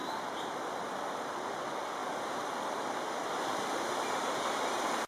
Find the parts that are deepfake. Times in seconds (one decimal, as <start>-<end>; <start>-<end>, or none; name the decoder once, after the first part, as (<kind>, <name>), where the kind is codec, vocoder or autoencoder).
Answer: 0.0-5.1 (vocoder, BigVGAN v2)